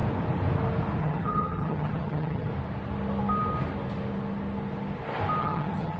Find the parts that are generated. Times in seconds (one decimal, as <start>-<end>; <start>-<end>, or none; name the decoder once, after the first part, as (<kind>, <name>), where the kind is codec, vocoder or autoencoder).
1.0-2.5 (vocoder, HiFi-GAN); 5.4-6.0